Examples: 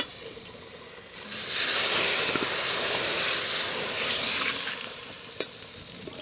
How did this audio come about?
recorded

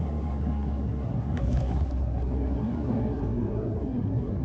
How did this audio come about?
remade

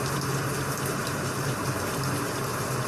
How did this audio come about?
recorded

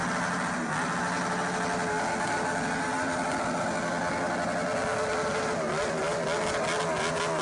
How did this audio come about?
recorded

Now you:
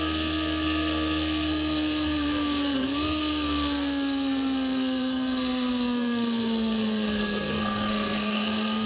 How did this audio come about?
remade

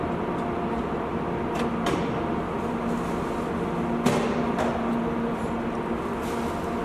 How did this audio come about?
recorded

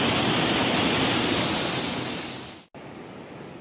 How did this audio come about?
recorded